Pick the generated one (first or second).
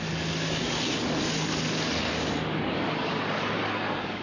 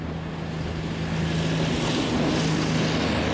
first